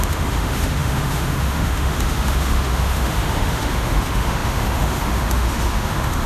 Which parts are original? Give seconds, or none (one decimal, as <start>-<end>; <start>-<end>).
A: none